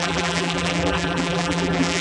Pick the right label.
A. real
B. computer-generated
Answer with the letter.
B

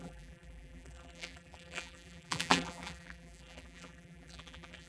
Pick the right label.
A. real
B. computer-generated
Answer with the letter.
B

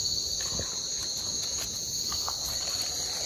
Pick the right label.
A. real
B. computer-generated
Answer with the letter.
A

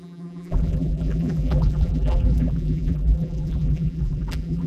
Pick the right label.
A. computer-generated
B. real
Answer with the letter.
A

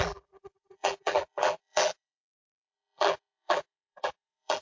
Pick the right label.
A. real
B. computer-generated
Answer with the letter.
B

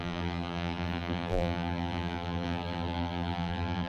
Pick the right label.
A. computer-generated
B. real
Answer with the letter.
A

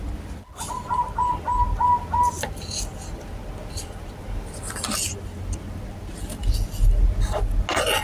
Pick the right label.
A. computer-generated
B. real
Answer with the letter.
B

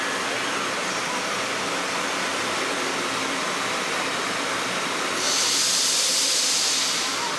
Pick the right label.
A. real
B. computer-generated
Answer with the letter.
B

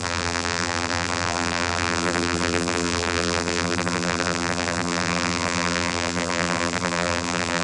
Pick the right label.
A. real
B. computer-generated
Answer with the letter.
B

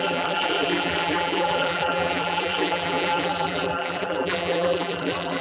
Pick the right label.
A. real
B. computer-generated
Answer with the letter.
B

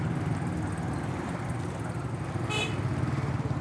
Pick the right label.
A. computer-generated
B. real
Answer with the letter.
B